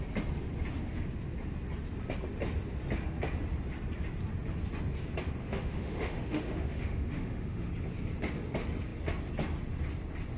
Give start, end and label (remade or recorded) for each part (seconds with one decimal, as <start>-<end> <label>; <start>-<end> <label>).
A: 0.0-5.4 recorded; 5.4-7.7 remade; 7.7-10.4 recorded